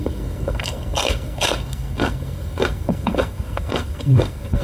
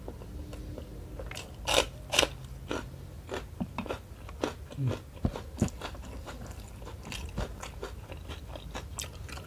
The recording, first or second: second